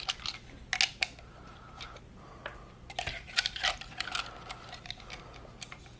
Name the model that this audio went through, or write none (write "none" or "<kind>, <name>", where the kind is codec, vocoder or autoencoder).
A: none